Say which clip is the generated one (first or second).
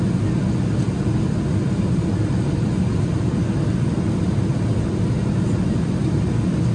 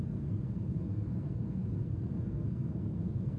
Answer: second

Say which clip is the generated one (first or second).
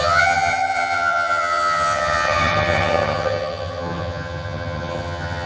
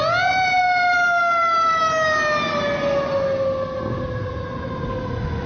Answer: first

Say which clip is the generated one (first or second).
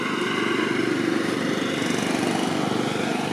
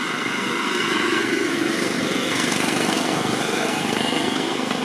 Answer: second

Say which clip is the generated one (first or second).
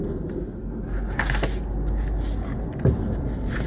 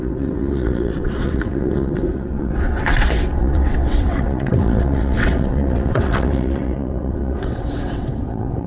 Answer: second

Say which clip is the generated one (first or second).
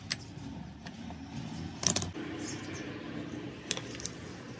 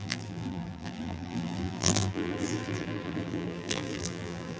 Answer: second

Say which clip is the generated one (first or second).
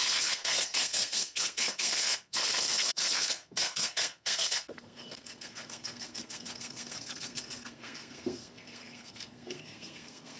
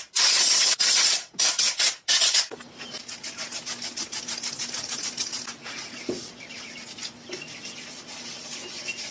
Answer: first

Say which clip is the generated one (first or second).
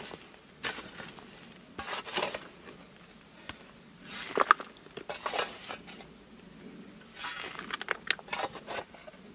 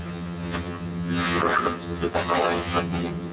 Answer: second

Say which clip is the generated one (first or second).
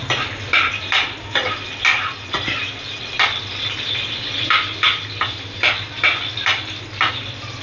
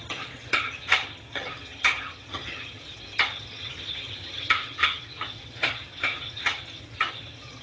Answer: second